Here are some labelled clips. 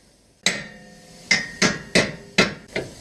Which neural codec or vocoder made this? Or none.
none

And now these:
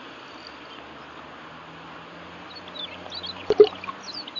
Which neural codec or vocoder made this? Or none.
none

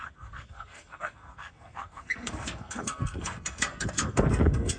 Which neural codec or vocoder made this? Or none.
codec, SNAC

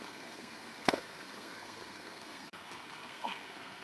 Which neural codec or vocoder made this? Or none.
codec, SNAC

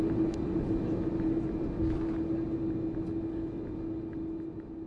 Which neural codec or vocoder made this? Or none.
none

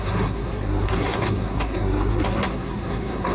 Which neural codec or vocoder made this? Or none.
codec, SNAC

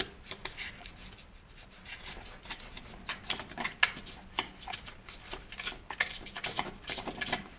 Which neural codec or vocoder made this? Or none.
none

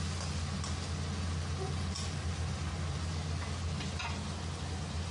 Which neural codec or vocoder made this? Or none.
none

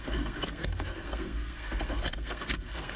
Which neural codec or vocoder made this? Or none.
codec, SNAC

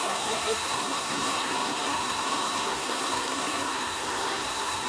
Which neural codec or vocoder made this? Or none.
codec, SNAC